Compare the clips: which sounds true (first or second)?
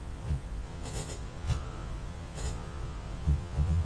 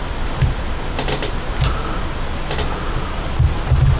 second